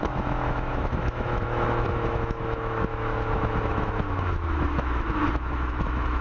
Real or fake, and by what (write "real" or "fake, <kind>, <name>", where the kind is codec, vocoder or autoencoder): fake, autoencoder, DAC-VAE